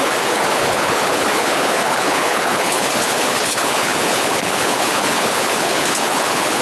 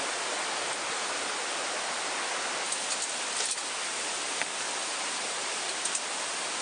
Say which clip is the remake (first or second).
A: first